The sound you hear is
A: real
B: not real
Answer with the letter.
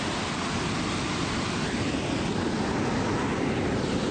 A